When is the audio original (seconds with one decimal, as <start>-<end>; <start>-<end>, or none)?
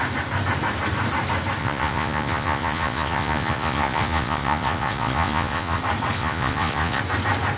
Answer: 0.0-1.6; 5.8-6.2; 7.0-7.6